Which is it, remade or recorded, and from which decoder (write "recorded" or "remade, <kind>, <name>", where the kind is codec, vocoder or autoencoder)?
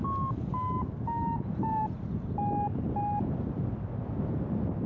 recorded